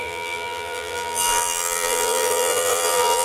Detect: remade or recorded remade